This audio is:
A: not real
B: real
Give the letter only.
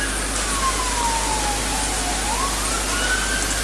B